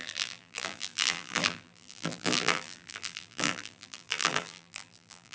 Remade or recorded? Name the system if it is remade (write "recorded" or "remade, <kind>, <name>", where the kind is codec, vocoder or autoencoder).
remade, vocoder, BigVGAN v2